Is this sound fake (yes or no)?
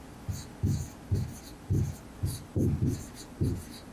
no